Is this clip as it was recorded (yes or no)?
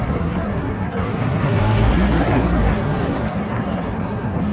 no